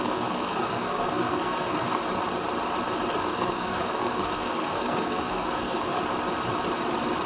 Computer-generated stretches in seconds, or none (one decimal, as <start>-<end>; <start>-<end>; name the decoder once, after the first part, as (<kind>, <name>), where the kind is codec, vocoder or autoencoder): 0.0-2.0 (codec, SNAC); 3.2-6.0